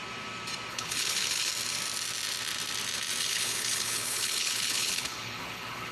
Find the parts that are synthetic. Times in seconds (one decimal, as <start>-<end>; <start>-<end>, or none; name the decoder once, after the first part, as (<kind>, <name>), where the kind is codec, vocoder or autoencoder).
0.7-1.5 (codec, HILCodec); 3.2-5.9